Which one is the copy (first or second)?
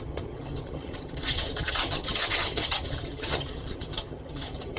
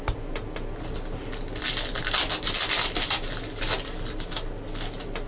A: first